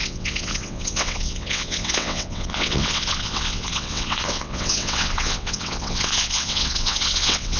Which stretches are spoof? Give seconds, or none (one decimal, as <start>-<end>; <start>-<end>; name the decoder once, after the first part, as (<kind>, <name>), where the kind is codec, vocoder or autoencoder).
0.0-7.6 (vocoder, WaveNeXt)